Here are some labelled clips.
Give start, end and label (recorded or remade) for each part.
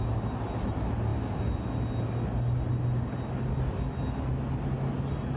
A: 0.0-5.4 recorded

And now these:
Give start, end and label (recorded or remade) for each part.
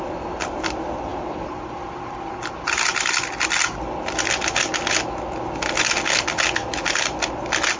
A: 0.0-7.8 recorded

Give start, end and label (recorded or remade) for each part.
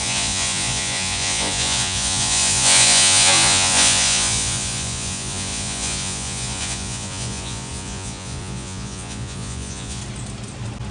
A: 0.0-10.0 remade; 10.0-10.9 recorded